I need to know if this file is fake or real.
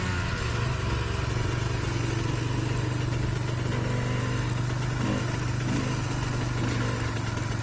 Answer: real